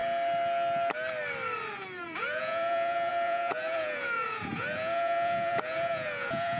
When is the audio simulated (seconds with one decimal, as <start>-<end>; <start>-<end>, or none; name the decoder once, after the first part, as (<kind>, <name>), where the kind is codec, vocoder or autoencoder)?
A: 1.7-6.6 (vocoder, Vocos)